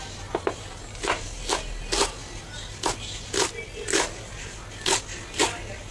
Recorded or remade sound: recorded